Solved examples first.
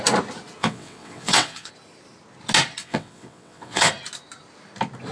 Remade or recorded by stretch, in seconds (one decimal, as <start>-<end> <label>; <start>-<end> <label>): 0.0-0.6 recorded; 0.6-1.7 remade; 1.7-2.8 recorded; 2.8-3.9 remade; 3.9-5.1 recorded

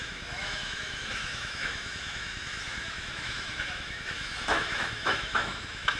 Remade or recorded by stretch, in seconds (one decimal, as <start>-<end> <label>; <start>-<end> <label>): 0.0-6.0 remade

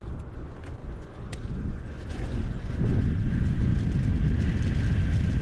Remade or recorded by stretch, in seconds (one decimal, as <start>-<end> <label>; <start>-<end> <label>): 0.0-3.7 remade; 3.7-5.4 recorded

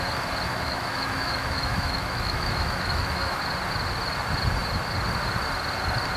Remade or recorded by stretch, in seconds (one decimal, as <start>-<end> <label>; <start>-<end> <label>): 0.0-0.5 recorded; 0.5-3.4 remade; 3.4-6.2 recorded

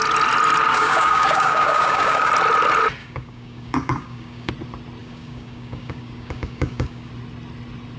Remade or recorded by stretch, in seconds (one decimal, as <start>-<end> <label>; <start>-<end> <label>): 0.0-0.7 recorded; 0.7-2.3 remade; 2.3-3.0 recorded; 3.0-4.5 remade; 4.5-5.0 recorded; 5.0-7.1 remade; 7.1-8.0 recorded

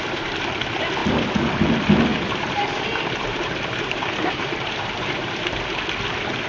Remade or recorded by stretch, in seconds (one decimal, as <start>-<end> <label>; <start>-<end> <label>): 0.0-2.1 recorded; 2.1-5.4 remade; 5.4-6.5 recorded

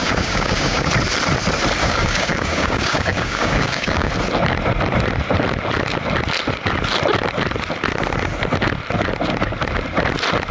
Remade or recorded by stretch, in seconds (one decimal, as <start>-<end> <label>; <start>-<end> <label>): 0.0-0.9 remade; 0.9-1.8 recorded; 1.8-4.1 remade; 4.1-10.5 recorded